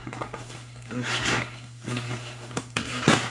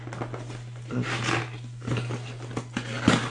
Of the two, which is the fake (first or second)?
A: first